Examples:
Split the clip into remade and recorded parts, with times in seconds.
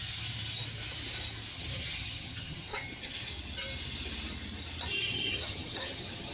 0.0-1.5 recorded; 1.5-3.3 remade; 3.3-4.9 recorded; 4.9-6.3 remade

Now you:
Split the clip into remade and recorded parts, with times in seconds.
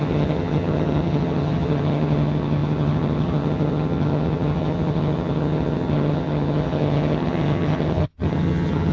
0.0-8.9 remade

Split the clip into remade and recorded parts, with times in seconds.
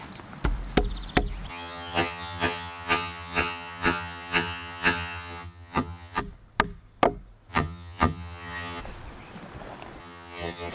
0.0-1.5 recorded; 1.5-6.2 remade; 6.2-7.5 recorded; 7.5-8.8 remade; 8.8-10.0 recorded; 10.0-10.7 remade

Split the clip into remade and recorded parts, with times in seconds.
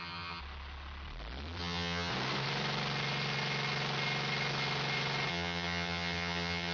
0.0-0.4 remade; 0.4-1.6 recorded; 1.6-2.1 remade; 2.1-5.3 recorded; 5.3-6.7 remade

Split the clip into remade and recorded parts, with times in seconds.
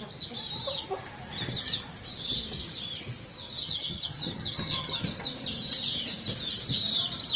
0.0-3.6 recorded; 3.6-5.0 remade; 5.0-7.4 recorded